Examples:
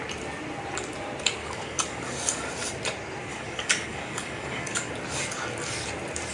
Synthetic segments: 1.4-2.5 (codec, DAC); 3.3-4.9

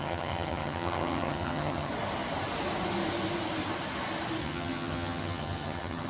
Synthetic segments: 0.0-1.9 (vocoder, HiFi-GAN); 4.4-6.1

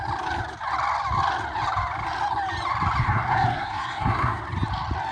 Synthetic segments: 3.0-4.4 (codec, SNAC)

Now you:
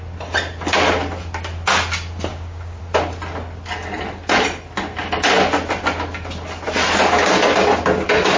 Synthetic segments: 2.3-2.8 (codec, DAC)

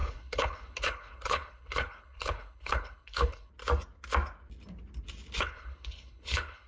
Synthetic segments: 0.0-3.5 (codec, HILCodec); 5.4-6.7

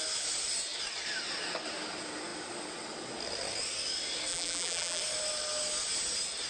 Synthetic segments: 4.3-5.0 (vocoder, BigVGAN v2)